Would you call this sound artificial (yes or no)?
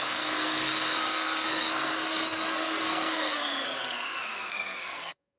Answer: yes